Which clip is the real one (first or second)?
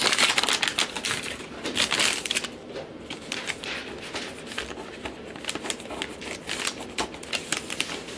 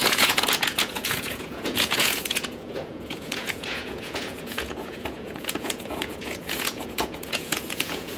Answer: first